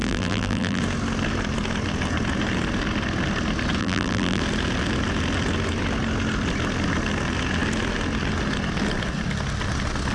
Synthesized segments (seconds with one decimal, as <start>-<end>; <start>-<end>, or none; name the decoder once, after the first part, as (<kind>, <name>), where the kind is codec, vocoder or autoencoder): 0.0-0.8 (vocoder, BigVGAN v2); 3.8-4.4